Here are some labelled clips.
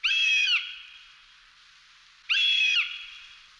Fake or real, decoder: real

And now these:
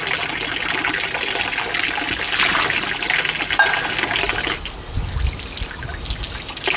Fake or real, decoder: real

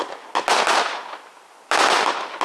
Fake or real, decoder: real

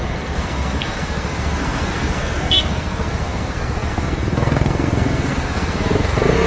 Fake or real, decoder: fake, codec, SNAC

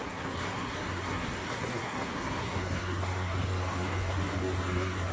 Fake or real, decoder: fake, codec, SNAC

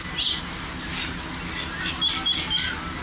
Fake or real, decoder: real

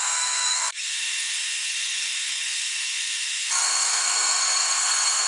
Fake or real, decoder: fake, codec, SNAC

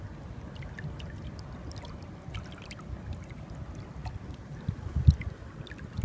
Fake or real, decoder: real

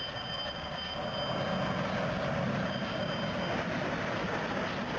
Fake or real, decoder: real